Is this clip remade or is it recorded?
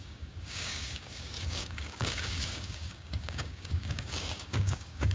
remade